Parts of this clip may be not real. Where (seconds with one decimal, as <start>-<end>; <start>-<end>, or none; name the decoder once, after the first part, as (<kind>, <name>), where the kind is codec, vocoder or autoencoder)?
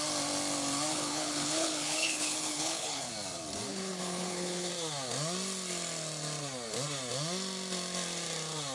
0.9-3.1 (codec, HILCodec); 3.7-4.7